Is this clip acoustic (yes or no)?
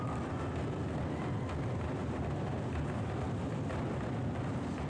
yes